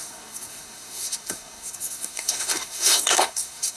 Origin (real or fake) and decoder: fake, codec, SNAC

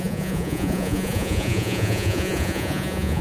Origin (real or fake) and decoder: fake, vocoder, Vocos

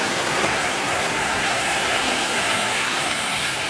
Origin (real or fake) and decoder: fake, codec, SNAC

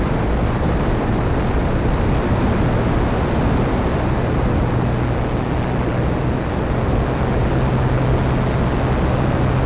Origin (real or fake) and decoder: real